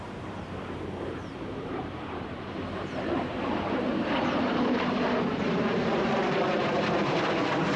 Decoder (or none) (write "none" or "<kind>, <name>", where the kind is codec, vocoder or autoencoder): vocoder, BigVGAN v2